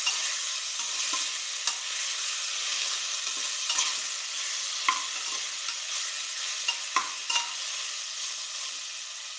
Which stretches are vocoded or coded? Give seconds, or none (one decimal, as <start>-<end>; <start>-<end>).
2.7-3.3

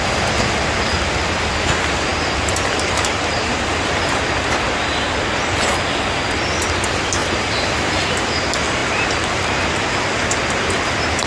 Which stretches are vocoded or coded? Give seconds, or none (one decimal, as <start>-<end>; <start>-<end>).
2.1-5.1; 7.2-7.7; 8.8-9.9

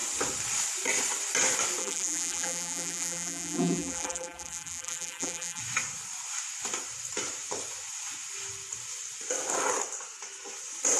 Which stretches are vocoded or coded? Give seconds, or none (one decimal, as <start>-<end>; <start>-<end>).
1.8-5.6